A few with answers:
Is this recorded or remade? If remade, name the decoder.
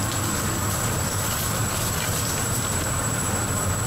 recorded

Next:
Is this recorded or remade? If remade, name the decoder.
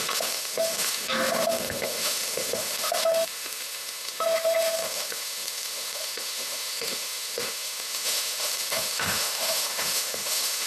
remade, autoencoder, DAC-VAE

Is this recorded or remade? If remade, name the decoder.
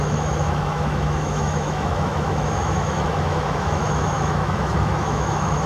remade, autoencoder, DAC-VAE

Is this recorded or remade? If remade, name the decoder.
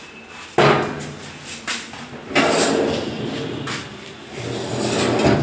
recorded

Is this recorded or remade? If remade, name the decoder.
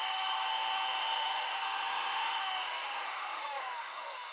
remade, autoencoder, DAC-VAE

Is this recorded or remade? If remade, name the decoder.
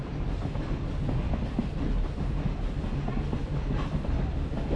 recorded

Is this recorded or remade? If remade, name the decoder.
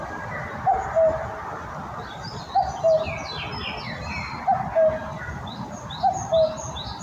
recorded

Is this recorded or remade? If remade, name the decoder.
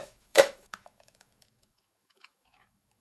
remade, autoencoder, DAC-VAE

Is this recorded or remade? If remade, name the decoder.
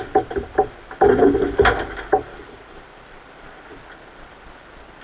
recorded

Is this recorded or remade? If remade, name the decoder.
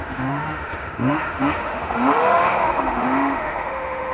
remade, autoencoder, DAC-VAE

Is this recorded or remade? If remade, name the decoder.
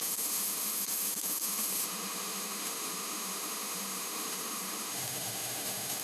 remade, autoencoder, DAC-VAE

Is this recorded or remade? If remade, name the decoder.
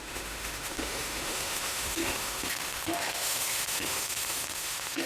remade, autoencoder, DAC-VAE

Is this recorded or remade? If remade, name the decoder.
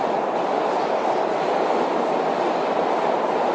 recorded